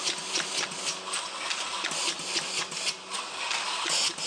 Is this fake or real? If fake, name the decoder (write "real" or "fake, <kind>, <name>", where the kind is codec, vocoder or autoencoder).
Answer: real